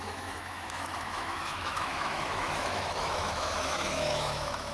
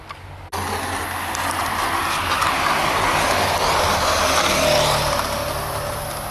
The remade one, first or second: first